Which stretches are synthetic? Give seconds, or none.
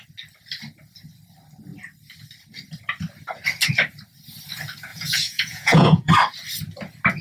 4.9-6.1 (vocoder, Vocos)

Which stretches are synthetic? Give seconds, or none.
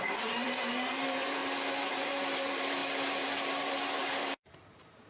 0.0-1.4 (vocoder, BigVGAN v2); 1.9-2.8; 4.0-5.1